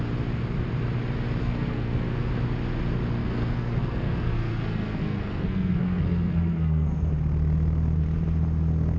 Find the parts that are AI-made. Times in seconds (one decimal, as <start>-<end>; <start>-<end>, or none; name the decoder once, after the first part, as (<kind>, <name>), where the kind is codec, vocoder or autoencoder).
1.4-2.3 (codec, SNAC); 3.2-7.1